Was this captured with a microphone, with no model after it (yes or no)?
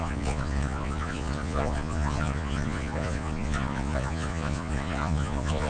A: no